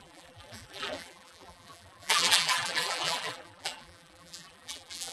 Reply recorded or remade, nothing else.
remade